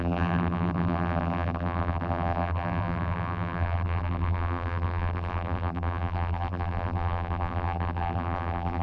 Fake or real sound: fake